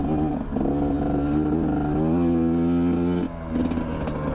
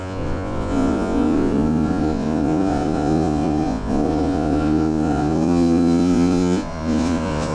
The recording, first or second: first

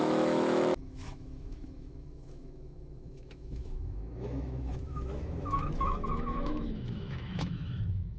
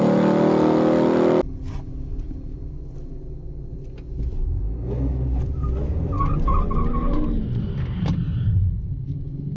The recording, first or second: second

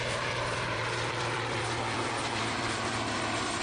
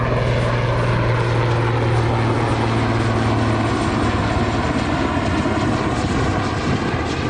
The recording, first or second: second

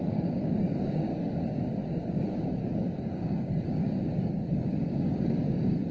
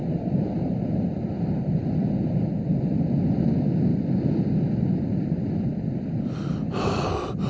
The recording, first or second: second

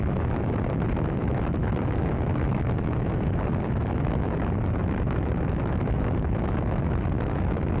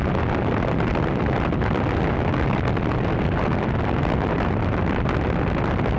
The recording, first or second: second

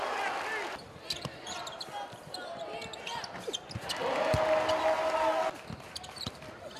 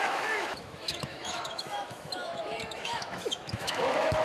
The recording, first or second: first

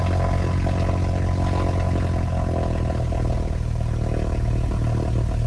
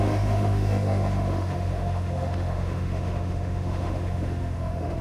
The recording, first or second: first